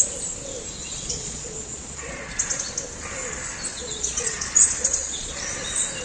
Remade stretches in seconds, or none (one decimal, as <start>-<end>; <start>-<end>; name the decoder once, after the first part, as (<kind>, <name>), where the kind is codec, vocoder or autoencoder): 0.8-2.6 (vocoder, Vocos); 3.7-5.4